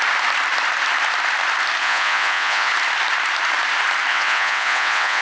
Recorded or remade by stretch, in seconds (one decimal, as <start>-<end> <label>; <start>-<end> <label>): 0.0-1.8 recorded; 1.8-2.7 remade; 2.7-4.1 recorded; 4.1-5.2 remade

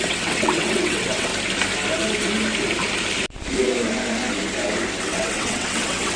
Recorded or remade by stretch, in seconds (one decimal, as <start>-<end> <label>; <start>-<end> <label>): 0.0-1.3 remade; 1.3-5.0 recorded; 5.0-6.2 remade

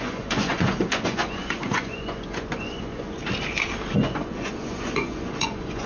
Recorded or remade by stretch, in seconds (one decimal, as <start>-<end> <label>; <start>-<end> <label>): 0.0-3.2 remade; 3.2-3.9 recorded; 3.9-5.9 remade

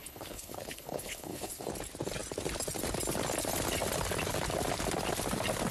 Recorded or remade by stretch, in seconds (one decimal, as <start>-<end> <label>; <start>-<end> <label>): 0.0-1.7 remade; 1.7-5.7 recorded

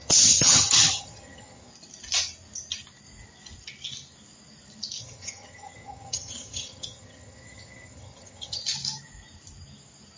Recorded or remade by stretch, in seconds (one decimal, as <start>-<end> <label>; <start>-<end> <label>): 0.0-1.7 remade; 1.7-5.0 recorded; 5.0-8.6 remade; 8.6-10.2 recorded